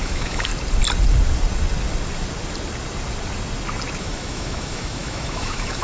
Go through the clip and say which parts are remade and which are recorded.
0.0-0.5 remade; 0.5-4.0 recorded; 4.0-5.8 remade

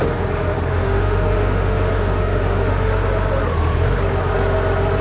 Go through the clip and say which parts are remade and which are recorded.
0.0-0.7 recorded; 0.7-2.9 remade; 2.9-5.0 recorded

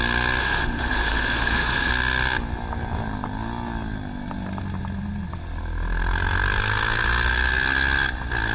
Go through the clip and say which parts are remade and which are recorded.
0.0-0.4 recorded; 0.4-1.9 remade; 1.9-8.5 recorded